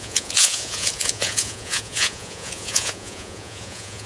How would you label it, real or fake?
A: fake